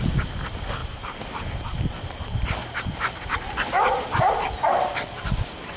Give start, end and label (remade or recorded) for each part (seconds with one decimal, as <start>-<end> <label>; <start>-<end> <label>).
0.0-0.8 recorded; 0.8-4.3 remade; 4.3-5.8 recorded